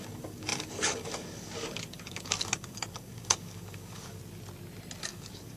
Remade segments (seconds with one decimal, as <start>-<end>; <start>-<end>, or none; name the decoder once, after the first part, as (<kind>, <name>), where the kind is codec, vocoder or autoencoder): 0.0-4.2 (codec, DAC); 5.0-5.6